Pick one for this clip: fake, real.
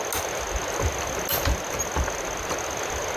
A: real